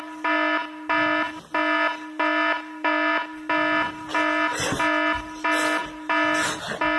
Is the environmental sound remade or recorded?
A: recorded